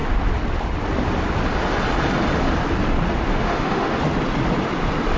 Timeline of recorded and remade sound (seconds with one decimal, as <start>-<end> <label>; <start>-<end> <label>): 0.0-3.3 recorded; 3.3-4.0 remade; 4.0-5.2 recorded